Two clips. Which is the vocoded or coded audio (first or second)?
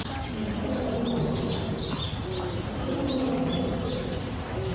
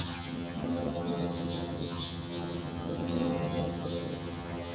second